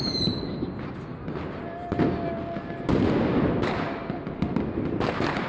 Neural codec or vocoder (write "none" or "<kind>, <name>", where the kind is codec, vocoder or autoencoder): none